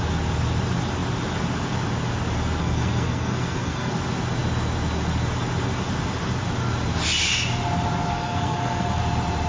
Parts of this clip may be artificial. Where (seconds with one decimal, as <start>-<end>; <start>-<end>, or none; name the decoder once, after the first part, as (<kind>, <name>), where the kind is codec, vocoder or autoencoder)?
2.6-3.9 (codec, SNAC); 8.1-9.0